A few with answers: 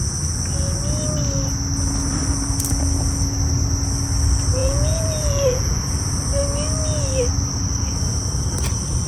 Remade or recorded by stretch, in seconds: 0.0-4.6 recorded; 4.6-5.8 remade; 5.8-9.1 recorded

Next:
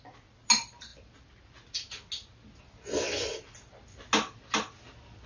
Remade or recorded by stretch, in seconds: 0.0-5.3 recorded

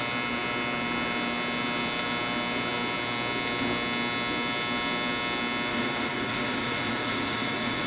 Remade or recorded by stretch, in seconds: 0.0-5.7 recorded; 5.7-7.9 remade